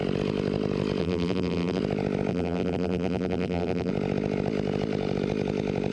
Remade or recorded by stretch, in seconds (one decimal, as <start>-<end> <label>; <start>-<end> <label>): 0.0-1.0 recorded; 1.0-1.8 remade; 1.8-2.3 recorded; 2.3-3.9 remade; 3.9-5.9 recorded